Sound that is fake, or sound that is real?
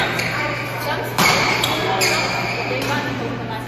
real